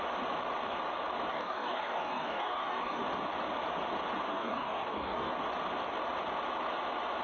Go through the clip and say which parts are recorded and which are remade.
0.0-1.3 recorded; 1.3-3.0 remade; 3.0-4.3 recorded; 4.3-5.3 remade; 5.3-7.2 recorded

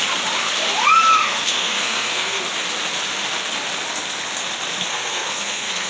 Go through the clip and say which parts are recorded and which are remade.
0.0-1.1 recorded; 1.1-2.4 remade; 2.4-4.9 recorded; 4.9-5.9 remade

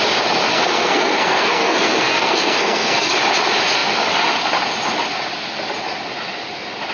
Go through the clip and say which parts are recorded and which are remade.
0.0-0.5 recorded; 0.5-3.1 remade; 3.1-6.9 recorded

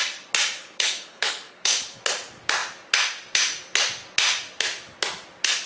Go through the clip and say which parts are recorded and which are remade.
0.0-0.6 recorded; 0.6-2.0 remade; 2.0-5.7 recorded

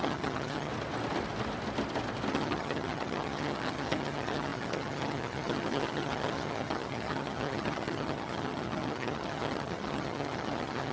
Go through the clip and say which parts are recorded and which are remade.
0.0-0.7 remade; 0.7-2.3 recorded; 2.3-10.9 remade

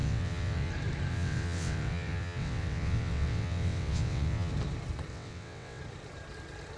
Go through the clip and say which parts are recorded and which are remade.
0.0-0.7 remade; 0.7-1.1 recorded; 1.1-4.5 remade; 4.5-5.1 recorded; 5.1-5.8 remade; 5.8-6.8 recorded

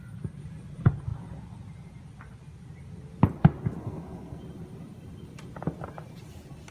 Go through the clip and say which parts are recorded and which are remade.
0.0-3.8 recorded; 3.8-4.4 remade; 4.4-6.7 recorded